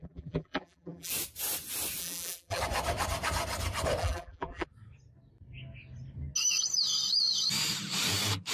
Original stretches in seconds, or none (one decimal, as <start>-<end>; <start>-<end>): 1.1-2.0; 2.6-4.0; 4.7-8.5